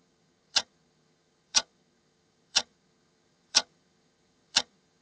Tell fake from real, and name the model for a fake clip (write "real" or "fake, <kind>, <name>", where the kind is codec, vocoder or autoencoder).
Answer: fake, vocoder, HiFi-GAN